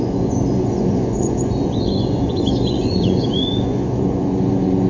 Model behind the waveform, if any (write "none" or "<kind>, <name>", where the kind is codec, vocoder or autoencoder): vocoder, Vocos